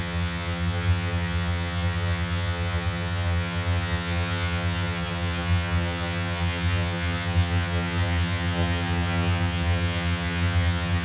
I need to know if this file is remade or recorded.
remade